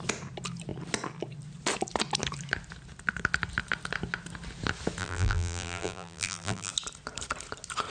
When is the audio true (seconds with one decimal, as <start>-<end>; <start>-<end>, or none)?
0.0-5.0; 6.7-7.9